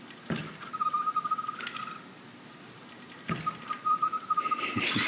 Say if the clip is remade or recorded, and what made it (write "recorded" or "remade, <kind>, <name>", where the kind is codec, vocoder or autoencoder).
recorded